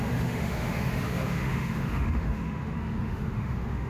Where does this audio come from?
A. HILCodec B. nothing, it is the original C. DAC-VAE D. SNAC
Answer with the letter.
C